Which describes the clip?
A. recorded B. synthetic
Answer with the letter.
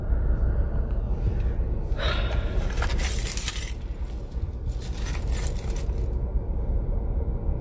A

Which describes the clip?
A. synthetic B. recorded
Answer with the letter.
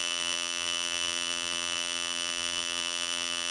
A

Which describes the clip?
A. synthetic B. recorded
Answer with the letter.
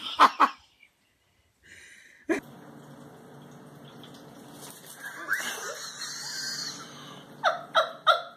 B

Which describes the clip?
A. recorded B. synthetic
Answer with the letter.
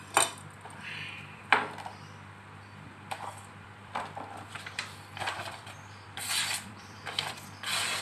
B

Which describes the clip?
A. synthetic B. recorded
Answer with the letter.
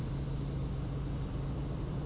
A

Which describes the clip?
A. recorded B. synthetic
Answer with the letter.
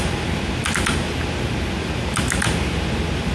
A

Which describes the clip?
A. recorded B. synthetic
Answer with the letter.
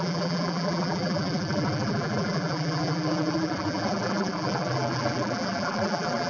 B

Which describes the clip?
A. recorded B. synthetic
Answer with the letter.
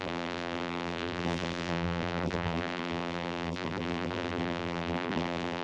B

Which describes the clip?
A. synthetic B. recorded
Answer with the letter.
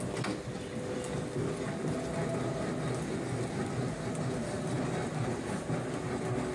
B